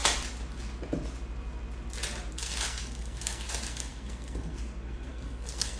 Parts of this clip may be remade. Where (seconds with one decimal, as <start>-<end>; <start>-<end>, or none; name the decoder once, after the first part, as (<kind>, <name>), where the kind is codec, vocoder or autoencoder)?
2.3-5.8 (codec, SNAC)